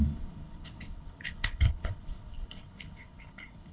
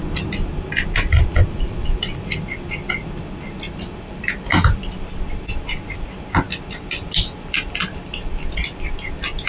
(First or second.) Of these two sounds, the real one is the second